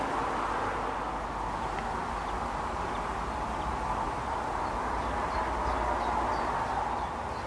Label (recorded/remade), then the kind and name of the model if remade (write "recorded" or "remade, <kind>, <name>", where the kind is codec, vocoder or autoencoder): recorded